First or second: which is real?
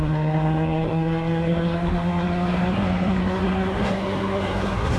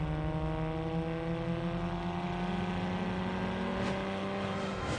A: second